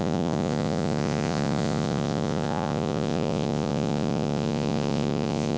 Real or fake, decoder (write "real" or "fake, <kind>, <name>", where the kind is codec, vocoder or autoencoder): fake, vocoder, Vocos